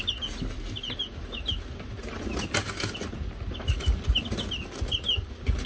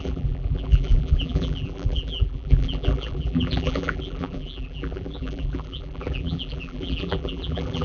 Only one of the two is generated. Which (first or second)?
second